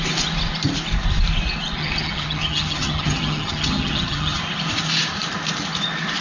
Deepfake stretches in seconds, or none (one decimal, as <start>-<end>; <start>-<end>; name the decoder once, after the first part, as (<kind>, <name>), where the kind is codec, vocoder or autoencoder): 1.8-4.4 (vocoder, HiFi-GAN)